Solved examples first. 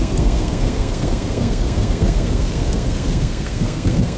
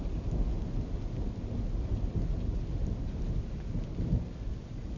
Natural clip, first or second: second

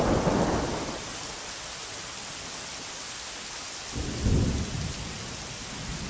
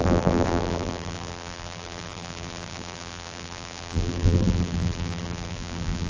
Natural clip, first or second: first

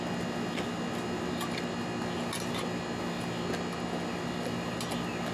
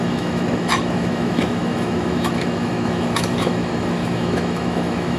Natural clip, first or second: first